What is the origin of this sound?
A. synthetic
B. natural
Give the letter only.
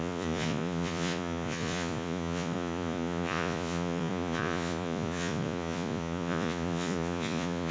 A